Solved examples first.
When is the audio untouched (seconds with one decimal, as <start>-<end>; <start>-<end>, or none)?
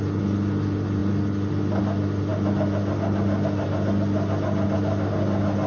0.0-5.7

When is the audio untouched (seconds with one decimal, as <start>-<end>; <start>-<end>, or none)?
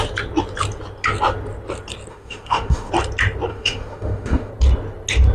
0.0-2.1; 2.9-3.5; 4.5-5.3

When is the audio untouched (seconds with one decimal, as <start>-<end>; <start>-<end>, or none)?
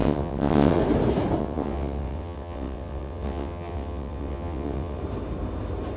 0.8-1.4; 5.0-6.0